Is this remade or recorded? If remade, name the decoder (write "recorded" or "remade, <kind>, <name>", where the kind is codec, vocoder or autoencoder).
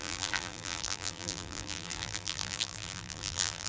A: remade, vocoder, BigVGAN v2